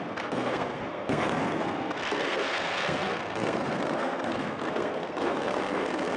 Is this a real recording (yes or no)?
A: no